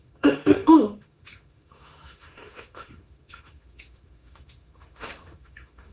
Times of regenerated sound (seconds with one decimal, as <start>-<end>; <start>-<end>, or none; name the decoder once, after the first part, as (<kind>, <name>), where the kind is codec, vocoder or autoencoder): 0.0-5.9 (autoencoder, DAC-VAE)